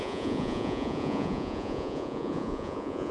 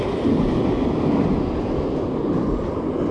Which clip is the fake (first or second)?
first